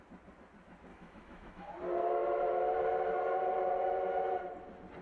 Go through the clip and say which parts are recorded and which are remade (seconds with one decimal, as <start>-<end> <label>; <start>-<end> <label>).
0.0-0.9 recorded; 0.9-1.7 remade; 1.7-5.0 recorded